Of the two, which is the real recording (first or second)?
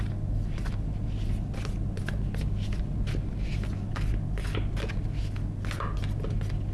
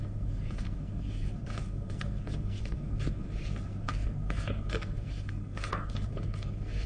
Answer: first